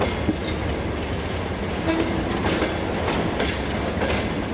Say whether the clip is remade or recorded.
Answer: recorded